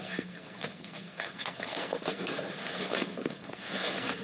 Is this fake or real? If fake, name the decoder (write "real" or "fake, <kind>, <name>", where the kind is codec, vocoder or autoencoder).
fake, codec, SNAC